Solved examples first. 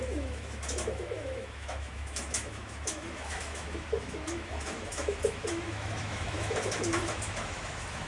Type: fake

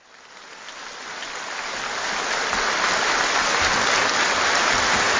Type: real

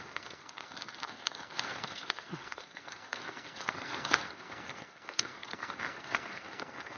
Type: fake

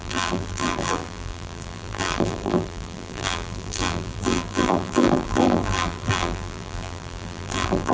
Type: fake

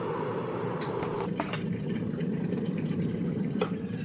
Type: fake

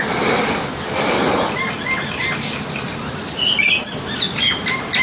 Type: real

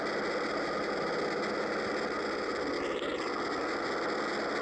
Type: real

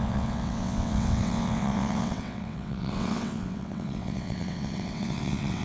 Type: fake